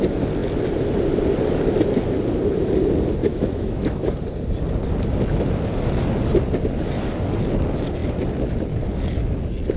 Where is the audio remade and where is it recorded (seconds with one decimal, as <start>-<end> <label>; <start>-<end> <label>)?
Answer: 0.0-3.2 recorded; 3.2-4.2 remade; 4.2-9.8 recorded